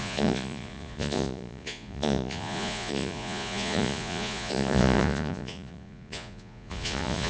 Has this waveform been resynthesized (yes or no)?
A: yes